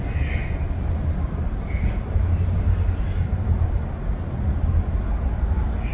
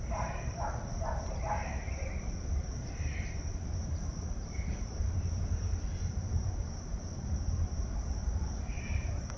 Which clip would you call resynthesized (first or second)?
second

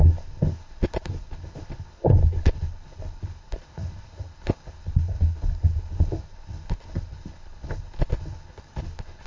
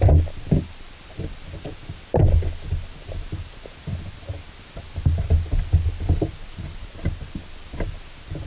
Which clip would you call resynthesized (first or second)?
first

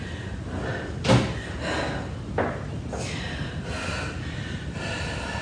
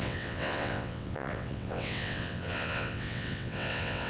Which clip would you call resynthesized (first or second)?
second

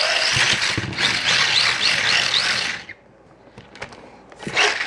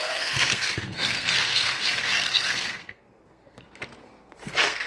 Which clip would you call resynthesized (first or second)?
second